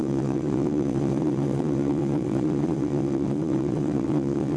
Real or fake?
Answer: fake